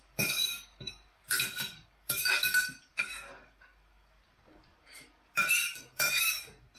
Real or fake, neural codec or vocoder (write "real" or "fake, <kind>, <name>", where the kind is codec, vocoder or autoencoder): fake, codec, DAC